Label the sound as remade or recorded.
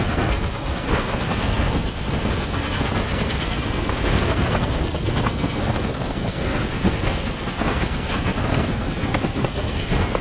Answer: remade